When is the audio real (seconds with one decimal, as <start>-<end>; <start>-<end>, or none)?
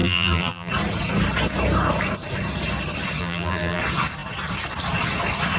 0.7-3.2; 3.8-5.6